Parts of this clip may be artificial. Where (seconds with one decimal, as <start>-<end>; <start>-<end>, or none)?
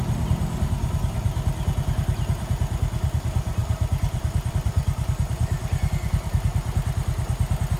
none